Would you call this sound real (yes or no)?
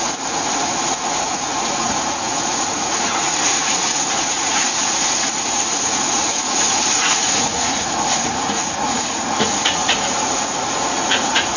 no